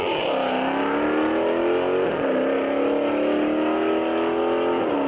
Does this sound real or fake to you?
real